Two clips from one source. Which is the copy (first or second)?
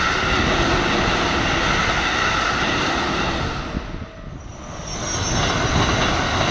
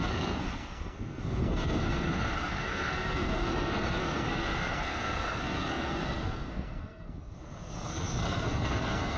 second